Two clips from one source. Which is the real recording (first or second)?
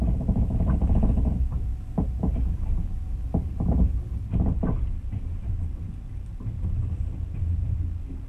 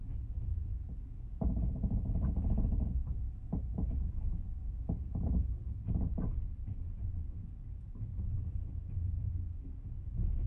first